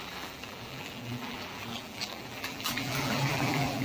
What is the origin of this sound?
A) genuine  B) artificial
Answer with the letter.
B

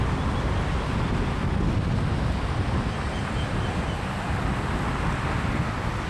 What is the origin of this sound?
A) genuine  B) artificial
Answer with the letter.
A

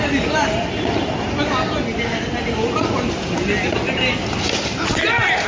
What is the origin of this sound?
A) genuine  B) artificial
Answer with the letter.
A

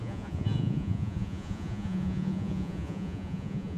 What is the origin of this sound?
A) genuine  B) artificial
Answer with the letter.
B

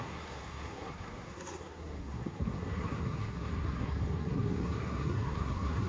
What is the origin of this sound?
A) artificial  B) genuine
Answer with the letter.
A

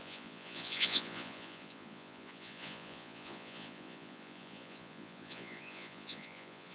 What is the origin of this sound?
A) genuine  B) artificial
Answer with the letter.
B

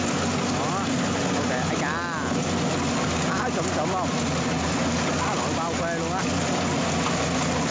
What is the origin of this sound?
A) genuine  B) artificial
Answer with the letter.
A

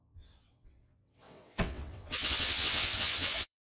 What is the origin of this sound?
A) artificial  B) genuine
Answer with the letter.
A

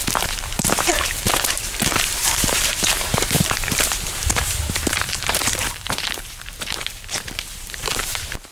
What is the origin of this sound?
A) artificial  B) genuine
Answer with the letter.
A